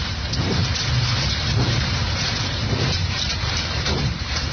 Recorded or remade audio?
remade